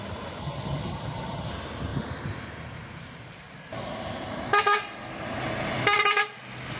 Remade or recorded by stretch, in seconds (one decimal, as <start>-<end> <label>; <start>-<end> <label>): 0.0-0.4 recorded; 0.4-1.5 remade; 1.5-6.8 recorded